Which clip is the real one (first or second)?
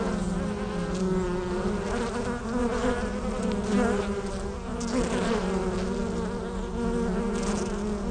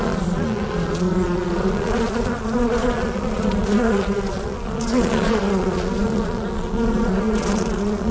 first